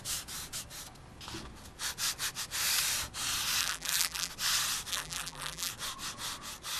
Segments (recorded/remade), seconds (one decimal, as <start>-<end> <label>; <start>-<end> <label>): 0.0-3.6 recorded; 3.6-4.3 remade; 4.3-4.9 recorded; 4.9-5.7 remade; 5.7-6.8 recorded